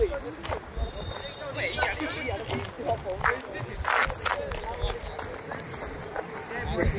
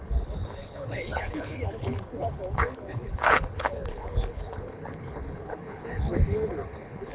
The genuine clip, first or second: first